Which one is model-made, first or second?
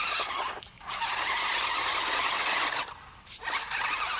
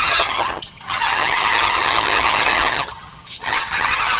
second